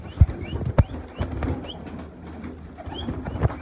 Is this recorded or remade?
recorded